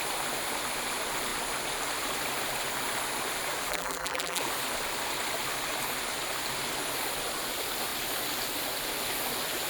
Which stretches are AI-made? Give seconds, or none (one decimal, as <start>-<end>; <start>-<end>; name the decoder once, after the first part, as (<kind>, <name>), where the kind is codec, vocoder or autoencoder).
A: 3.7-4.4 (vocoder, BigVGAN v2)